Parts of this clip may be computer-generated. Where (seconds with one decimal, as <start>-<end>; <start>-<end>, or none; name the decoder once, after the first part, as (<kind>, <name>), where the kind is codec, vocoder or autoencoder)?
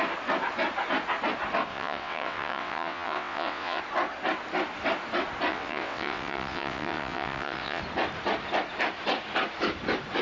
1.7-3.8 (vocoder, WaveNeXt); 5.5-7.8